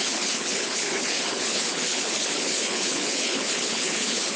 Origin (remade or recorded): remade